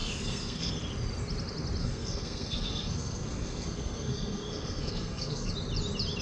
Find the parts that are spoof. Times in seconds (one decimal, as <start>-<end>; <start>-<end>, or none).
0.0-0.7; 1.8-5.5

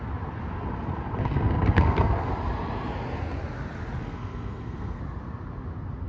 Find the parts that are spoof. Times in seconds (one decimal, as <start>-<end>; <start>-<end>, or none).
1.2-2.3; 4.0-5.0

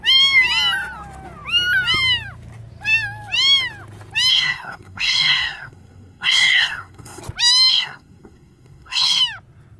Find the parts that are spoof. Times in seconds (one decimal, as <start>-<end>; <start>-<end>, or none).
4.3-7.2; 7.7-9.2

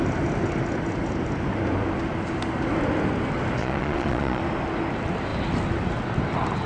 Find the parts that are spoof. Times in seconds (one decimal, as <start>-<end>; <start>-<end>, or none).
3.6-4.4

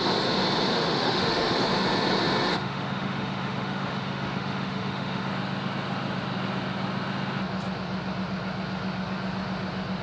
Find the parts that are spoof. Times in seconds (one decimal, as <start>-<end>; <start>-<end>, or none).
0.7-1.7; 2.5-5.3

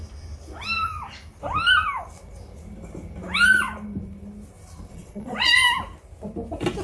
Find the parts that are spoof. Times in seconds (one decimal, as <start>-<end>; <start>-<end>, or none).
4.9-5.5